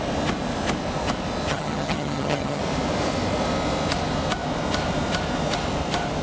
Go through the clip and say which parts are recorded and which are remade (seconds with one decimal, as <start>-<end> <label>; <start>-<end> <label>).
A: 0.0-1.5 recorded; 1.5-2.6 remade; 2.6-6.2 recorded